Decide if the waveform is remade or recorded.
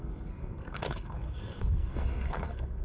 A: remade